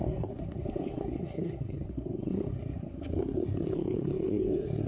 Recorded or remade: remade